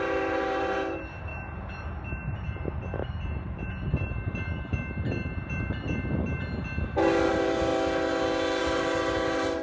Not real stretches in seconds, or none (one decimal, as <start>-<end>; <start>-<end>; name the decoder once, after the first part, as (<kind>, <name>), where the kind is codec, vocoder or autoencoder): 0.0-7.7 (vocoder, BigVGAN v2); 8.6-9.6